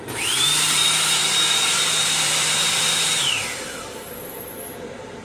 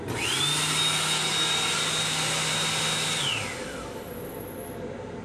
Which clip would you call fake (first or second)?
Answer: first